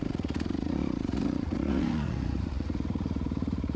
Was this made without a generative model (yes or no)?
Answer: no